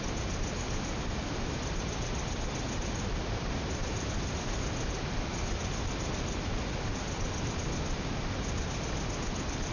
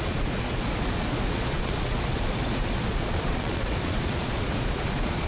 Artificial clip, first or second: second